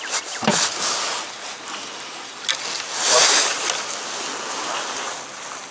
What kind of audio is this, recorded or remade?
recorded